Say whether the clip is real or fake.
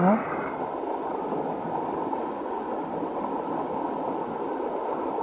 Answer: real